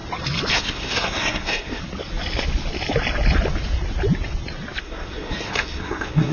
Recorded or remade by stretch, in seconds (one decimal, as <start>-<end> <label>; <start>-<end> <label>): 0.0-0.5 recorded; 0.5-1.8 remade; 1.8-4.8 recorded; 4.8-6.3 remade